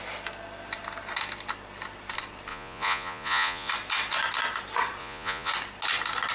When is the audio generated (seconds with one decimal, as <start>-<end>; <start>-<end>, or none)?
2.5-3.7; 5.0-5.5